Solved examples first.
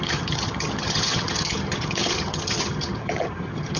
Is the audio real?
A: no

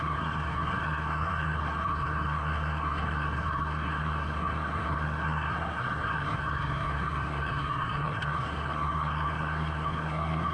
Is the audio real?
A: no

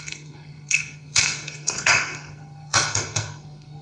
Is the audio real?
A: no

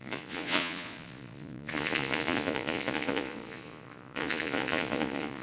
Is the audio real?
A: no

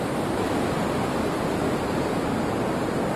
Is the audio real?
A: yes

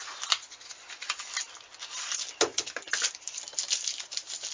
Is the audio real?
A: yes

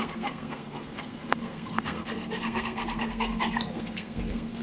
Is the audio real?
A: no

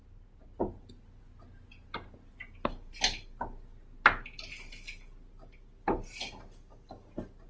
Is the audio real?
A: yes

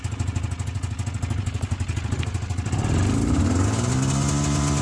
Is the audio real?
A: yes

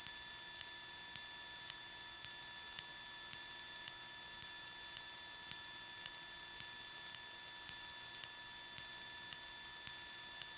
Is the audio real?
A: yes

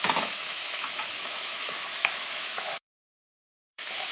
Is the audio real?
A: no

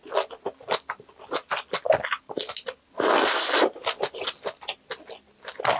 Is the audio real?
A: yes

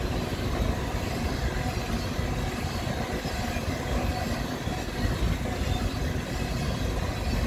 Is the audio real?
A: yes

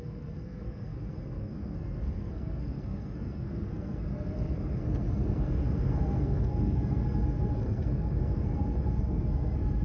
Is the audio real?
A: no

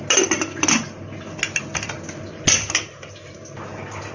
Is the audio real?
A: yes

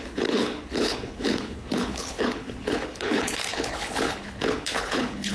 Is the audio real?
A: no